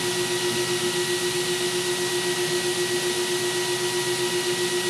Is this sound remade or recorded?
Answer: recorded